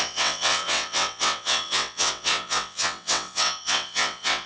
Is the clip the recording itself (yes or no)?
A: no